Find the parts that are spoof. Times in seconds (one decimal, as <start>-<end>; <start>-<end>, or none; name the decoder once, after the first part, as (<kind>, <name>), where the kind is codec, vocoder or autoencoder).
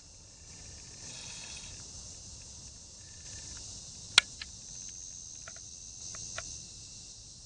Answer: 1.1-1.7 (codec, HILCodec)